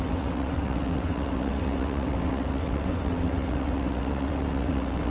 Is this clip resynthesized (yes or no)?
yes